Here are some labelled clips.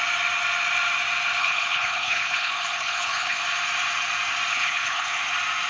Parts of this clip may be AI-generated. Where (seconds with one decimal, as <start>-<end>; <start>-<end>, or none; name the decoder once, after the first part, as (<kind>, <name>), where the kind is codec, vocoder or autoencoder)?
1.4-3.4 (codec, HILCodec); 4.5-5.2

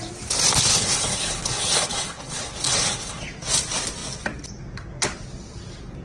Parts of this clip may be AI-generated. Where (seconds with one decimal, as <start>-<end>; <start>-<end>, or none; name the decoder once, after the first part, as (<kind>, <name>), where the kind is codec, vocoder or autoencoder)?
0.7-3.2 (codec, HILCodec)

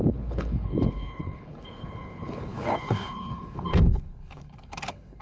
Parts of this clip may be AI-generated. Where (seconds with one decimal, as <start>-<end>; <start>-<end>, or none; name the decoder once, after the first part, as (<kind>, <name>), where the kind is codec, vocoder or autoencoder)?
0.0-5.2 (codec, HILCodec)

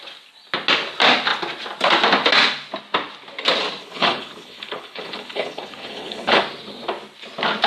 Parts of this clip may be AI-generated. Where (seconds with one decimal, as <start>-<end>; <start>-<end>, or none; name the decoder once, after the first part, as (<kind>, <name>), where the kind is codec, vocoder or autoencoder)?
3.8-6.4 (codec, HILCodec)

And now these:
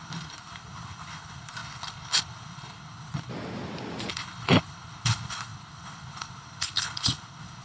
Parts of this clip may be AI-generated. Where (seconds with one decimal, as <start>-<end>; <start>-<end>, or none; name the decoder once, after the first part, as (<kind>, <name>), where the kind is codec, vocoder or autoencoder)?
0.0-3.3 (codec, HILCodec); 4.1-7.6